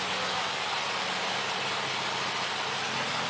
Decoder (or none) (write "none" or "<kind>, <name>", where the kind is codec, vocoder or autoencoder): none